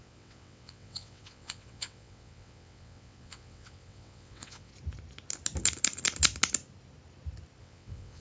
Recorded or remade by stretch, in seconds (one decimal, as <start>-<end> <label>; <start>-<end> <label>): 0.0-4.7 remade; 4.7-7.6 recorded; 7.6-8.2 remade